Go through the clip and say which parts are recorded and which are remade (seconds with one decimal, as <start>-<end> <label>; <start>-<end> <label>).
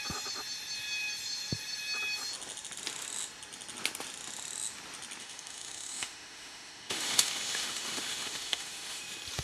0.0-5.2 recorded; 5.2-9.0 remade; 9.0-9.4 recorded